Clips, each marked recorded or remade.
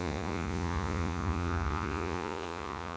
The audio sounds remade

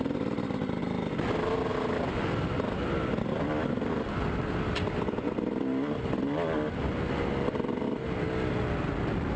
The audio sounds recorded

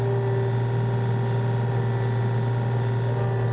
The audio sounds recorded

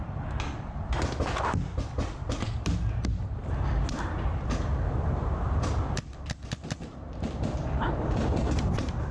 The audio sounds recorded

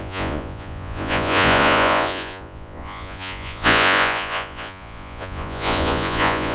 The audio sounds remade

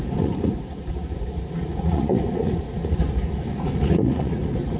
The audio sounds remade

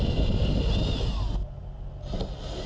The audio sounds recorded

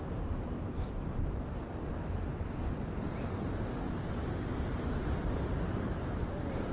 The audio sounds recorded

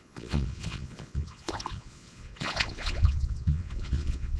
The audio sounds remade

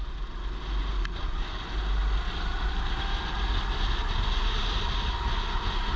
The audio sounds recorded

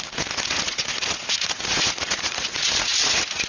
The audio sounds remade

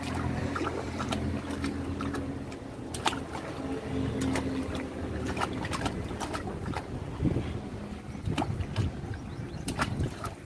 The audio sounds recorded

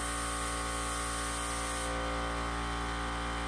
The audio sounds recorded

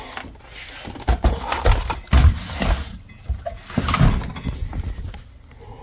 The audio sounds recorded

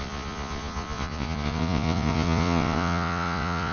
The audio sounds remade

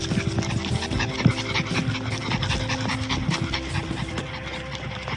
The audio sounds recorded